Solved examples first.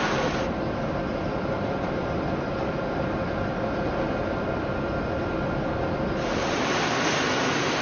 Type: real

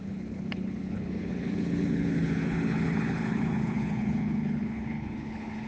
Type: fake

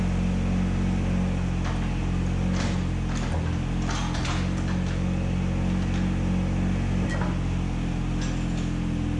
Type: real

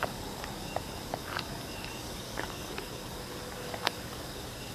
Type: fake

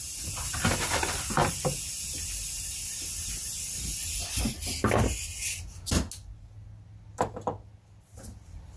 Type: real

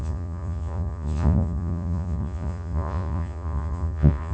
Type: fake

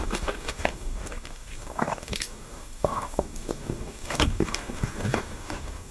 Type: fake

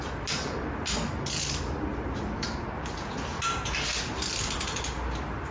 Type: real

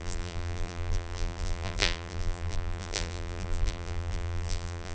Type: fake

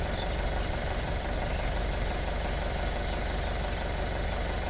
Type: real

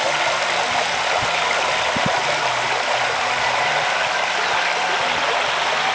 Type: real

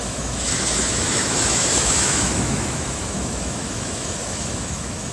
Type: fake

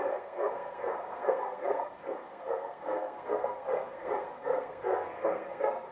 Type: fake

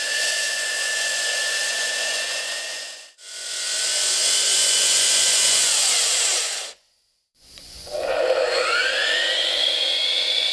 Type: fake